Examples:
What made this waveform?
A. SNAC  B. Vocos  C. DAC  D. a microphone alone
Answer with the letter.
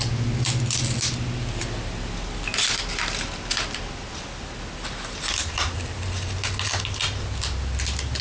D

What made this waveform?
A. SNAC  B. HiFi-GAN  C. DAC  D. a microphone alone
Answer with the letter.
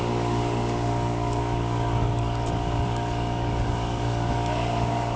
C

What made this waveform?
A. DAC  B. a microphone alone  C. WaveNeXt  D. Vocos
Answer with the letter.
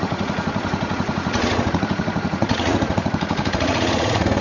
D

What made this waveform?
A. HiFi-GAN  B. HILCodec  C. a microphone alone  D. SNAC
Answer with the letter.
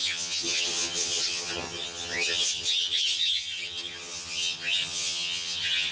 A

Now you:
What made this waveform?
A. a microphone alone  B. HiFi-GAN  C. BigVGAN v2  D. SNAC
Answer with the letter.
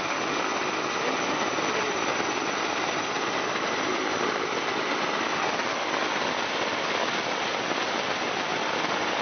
A